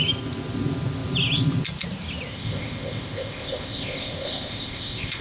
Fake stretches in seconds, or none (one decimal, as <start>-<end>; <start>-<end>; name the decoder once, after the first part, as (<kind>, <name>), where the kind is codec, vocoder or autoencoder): 2.3-5.2 (codec, ZipCodec)